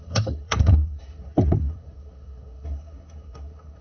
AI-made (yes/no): yes